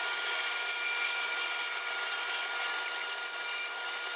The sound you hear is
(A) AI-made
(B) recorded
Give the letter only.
B